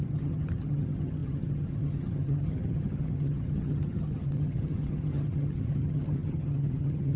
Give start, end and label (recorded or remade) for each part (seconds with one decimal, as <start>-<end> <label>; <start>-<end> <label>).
0.0-7.2 remade